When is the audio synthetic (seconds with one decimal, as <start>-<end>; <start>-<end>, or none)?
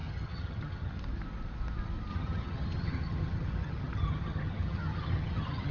0.0-0.9; 2.1-5.7